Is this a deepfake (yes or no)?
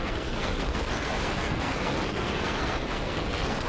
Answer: yes